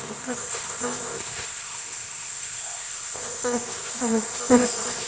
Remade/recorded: remade